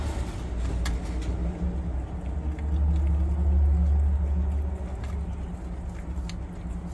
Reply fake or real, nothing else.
real